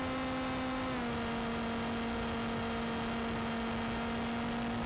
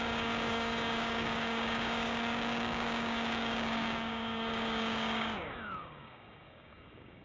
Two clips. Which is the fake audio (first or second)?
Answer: second